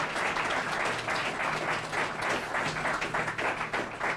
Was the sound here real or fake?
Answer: real